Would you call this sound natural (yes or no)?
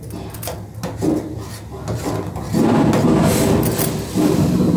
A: yes